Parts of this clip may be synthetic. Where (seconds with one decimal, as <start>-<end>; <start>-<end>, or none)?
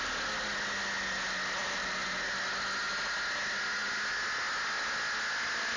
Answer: 1.6-2.4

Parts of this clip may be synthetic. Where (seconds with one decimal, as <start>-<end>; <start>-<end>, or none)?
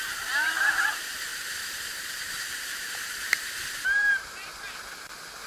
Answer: 1.3-4.6